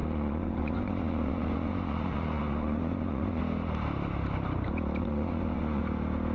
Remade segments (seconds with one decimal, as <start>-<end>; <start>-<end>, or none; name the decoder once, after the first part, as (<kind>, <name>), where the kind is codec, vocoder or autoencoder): 0.0-3.4 (vocoder, Vocos); 5.0-5.8